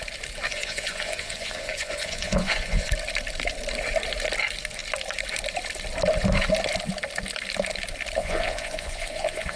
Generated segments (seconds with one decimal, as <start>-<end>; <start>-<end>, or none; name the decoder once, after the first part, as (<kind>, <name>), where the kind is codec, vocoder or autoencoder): 0.5-2.9 (vocoder, Vocos); 8.2-9.6